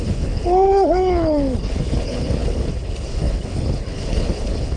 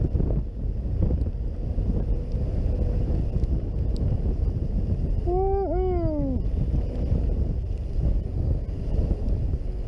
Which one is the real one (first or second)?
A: second